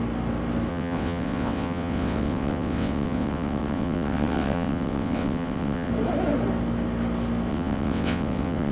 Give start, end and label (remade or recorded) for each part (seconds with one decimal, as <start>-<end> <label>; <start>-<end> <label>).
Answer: 0.0-0.7 recorded; 0.7-5.9 remade; 5.9-7.5 recorded; 7.5-8.7 remade